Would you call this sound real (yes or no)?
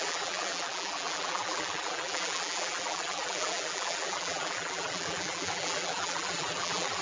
no